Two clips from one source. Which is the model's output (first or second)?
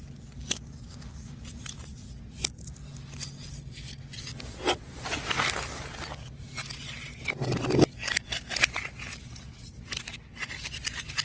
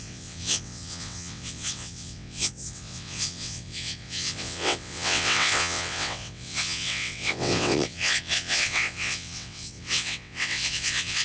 second